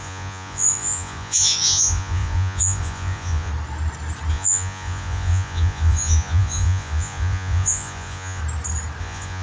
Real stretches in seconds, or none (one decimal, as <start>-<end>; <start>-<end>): 3.5-4.3; 8.4-9.0